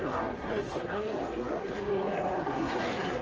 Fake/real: fake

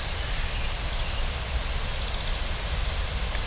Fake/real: real